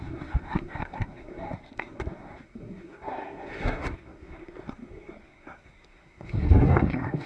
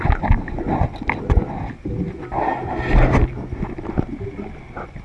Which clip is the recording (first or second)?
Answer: second